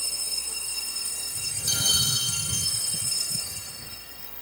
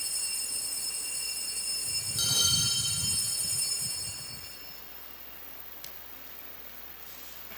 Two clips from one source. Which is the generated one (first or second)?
first